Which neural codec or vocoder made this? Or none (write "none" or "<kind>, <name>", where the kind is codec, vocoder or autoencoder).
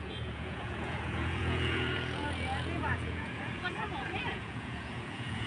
vocoder, Vocos